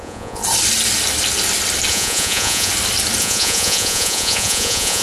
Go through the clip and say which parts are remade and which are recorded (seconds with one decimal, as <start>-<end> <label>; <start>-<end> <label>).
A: 0.0-0.4 remade; 0.4-1.9 recorded; 1.9-2.7 remade; 2.7-3.2 recorded; 3.2-5.0 remade